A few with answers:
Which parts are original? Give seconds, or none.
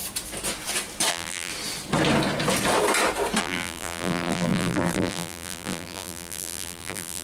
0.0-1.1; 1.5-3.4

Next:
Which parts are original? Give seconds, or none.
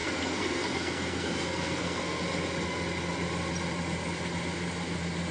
2.2-5.3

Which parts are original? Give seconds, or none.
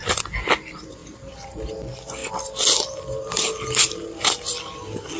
0.0-5.2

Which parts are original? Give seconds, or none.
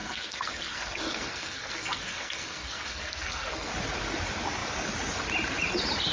3.7-6.1